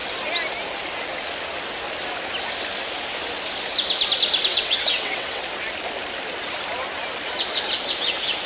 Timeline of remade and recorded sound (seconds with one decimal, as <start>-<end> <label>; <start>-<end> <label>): 0.0-4.5 recorded; 4.5-5.4 remade; 5.4-8.5 recorded

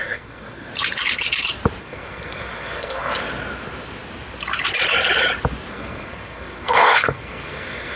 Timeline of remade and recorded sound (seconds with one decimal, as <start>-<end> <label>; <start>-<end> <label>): 0.0-0.7 remade; 0.7-1.8 recorded; 1.8-3.1 remade; 3.1-5.7 recorded; 5.7-8.0 remade